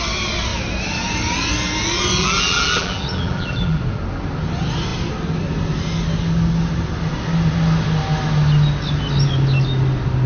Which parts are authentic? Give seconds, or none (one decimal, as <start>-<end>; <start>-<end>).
0.0-2.2; 3.8-10.3